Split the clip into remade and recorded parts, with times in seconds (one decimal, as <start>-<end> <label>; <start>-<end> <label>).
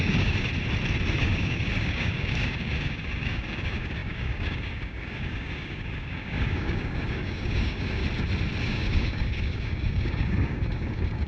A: 0.0-0.5 remade; 0.5-1.2 recorded; 1.2-8.0 remade; 8.0-8.6 recorded; 8.6-11.3 remade